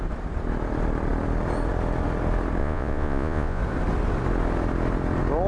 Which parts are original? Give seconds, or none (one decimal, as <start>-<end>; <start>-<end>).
0.0-2.6; 3.6-5.5